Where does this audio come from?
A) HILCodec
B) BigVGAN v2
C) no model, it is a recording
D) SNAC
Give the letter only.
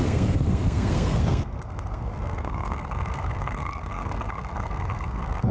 D